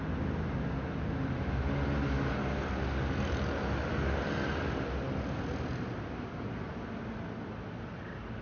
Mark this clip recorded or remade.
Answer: recorded